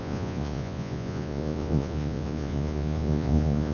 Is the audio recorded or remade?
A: remade